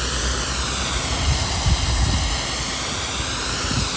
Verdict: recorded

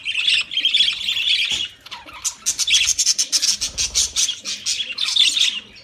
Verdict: recorded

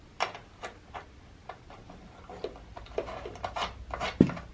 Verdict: recorded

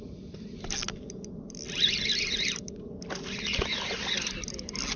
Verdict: recorded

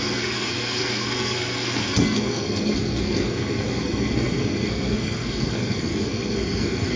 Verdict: remade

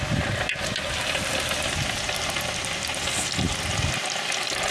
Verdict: recorded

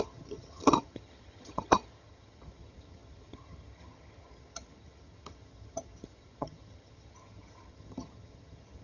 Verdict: remade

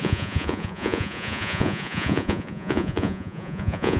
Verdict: remade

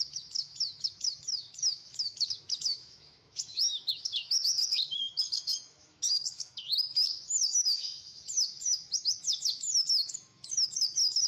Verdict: remade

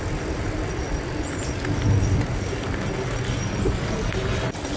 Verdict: recorded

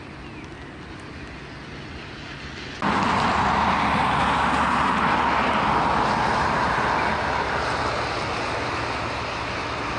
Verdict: recorded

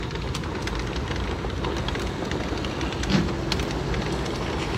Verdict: recorded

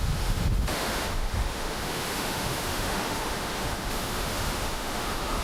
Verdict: remade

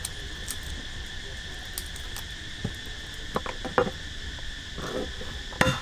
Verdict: recorded